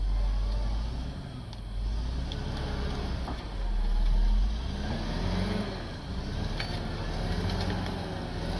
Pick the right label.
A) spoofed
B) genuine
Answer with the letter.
B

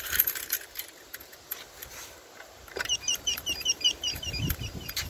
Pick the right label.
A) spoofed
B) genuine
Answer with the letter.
A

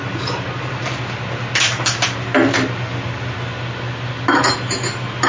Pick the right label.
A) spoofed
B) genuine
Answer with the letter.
B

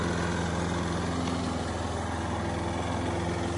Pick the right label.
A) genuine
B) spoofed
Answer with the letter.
A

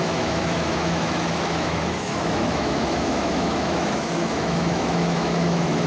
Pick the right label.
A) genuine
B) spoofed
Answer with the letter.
B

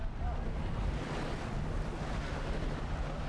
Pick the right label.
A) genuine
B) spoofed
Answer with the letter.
A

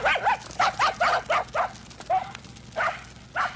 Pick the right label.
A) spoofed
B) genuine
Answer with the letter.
B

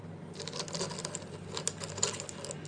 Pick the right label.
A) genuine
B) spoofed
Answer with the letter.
A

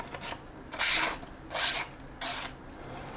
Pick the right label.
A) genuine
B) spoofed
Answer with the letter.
A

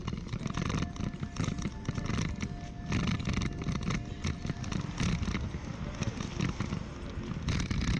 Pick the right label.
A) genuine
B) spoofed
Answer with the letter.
A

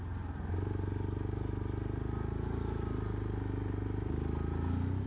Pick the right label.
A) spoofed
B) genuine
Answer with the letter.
B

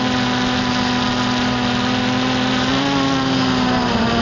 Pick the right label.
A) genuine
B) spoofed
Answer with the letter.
A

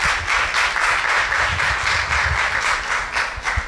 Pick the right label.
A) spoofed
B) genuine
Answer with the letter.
B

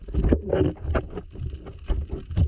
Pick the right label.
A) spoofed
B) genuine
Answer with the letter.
B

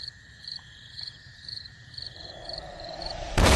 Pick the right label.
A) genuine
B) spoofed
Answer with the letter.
B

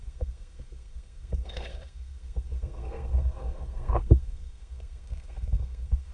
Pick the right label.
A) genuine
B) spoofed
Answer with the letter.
B